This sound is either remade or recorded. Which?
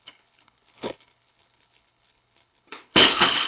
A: remade